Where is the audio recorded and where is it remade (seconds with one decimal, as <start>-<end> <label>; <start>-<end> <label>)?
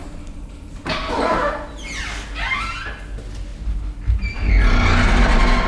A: 0.0-1.7 remade; 1.7-3.5 recorded; 3.5-4.5 remade; 4.5-5.7 recorded